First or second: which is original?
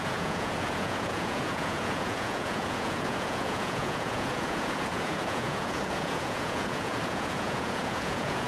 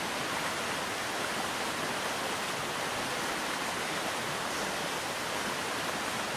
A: second